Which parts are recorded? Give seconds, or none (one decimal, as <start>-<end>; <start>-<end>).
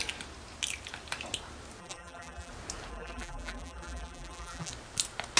0.0-1.8; 2.5-2.9; 4.7-5.4